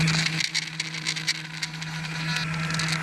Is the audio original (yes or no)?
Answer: yes